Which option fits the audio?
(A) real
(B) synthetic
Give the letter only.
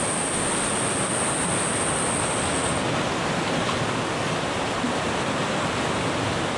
A